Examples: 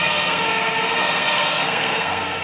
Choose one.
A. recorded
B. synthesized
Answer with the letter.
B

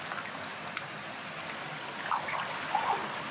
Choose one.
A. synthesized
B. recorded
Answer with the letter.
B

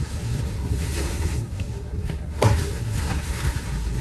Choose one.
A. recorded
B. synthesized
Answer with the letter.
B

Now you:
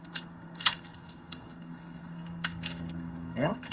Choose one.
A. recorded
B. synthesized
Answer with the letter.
B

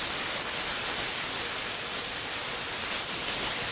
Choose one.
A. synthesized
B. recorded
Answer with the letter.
B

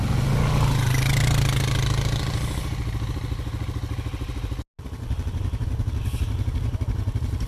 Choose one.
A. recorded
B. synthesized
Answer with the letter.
A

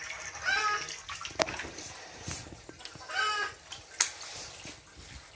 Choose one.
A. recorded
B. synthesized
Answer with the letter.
A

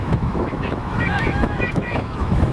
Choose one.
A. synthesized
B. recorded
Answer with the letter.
A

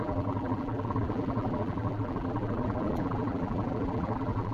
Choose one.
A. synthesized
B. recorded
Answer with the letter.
A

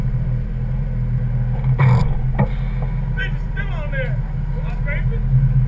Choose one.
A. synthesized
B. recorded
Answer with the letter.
B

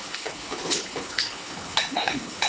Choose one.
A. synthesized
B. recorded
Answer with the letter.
A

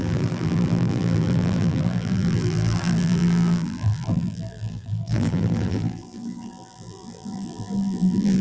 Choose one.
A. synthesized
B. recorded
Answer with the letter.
A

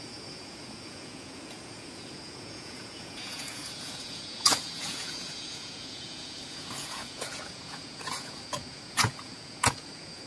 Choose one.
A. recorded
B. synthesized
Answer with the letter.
B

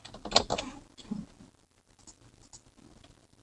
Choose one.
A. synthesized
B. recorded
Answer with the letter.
B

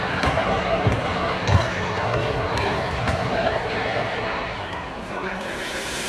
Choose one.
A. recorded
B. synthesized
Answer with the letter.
B